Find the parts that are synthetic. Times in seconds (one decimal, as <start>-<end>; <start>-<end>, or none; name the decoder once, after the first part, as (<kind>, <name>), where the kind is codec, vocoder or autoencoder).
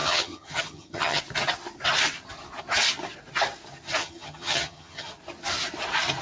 0.0-1.2 (vocoder, HiFi-GAN); 4.0-5.1